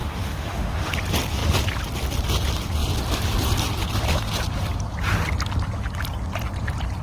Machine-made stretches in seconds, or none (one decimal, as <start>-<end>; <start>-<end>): 0.0-0.9